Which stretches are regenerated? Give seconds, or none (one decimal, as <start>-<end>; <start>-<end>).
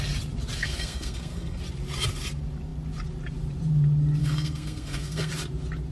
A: 0.6-1.6; 4.2-5.3